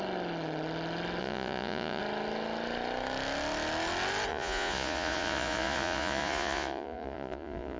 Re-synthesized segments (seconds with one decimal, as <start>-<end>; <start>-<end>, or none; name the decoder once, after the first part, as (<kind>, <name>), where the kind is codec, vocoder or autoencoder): 1.2-2.0 (vocoder, Vocos); 4.3-7.8